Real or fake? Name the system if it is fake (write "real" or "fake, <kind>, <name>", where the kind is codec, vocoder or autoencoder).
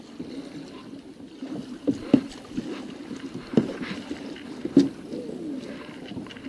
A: real